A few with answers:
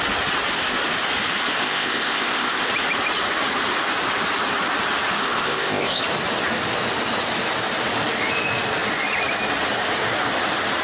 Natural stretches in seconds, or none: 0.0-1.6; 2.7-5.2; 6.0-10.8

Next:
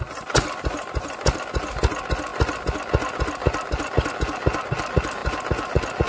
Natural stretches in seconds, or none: 0.0-6.1